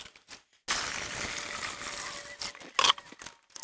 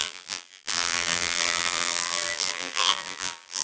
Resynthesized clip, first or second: second